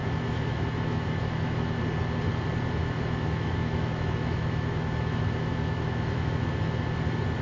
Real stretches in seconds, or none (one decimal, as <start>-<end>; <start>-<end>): 1.8-2.8; 6.6-7.4